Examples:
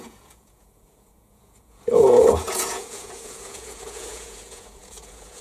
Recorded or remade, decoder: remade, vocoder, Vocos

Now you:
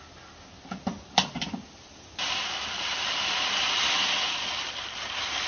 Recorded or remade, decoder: recorded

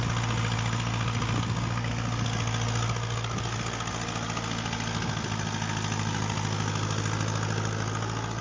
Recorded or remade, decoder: recorded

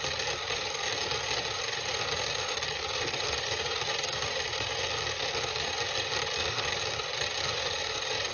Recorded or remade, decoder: recorded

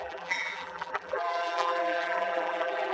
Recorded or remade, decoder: remade, vocoder, BigVGAN v2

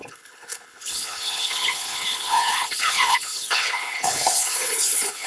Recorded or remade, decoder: remade, codec, HILCodec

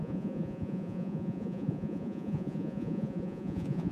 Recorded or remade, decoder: remade, vocoder, Vocos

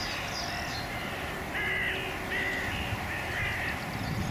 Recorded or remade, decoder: recorded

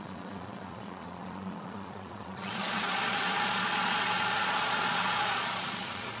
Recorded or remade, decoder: remade, vocoder, Vocos